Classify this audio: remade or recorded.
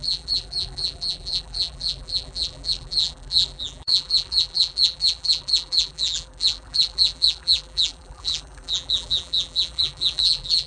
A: remade